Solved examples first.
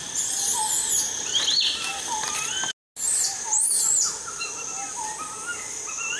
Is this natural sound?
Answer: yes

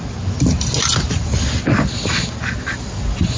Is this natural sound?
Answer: yes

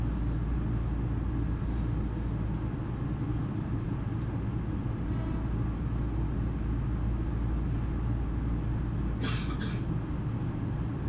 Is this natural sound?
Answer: yes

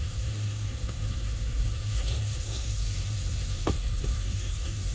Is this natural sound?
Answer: no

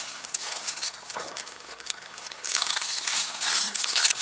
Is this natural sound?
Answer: no